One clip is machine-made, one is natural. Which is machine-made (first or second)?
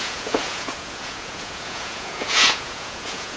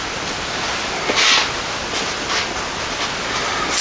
first